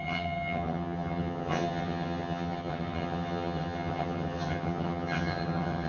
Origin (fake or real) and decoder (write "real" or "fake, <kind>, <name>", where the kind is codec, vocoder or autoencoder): fake, vocoder, HiFi-GAN